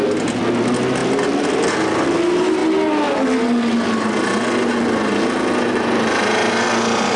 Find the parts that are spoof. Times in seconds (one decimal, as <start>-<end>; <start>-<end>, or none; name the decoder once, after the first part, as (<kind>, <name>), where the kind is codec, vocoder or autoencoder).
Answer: none